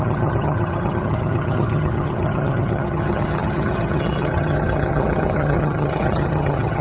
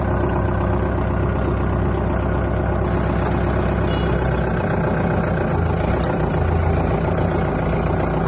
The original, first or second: second